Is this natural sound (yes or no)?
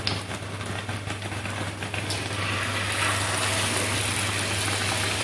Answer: yes